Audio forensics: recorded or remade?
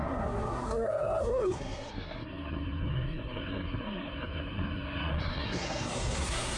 remade